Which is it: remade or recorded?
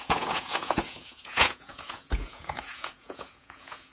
remade